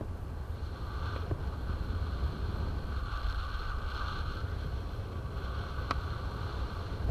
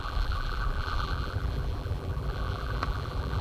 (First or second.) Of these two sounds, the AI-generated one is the second